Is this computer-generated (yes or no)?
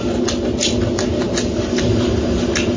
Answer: no